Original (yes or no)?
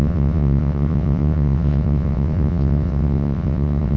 no